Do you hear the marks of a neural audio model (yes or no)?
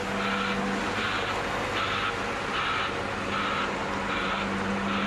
no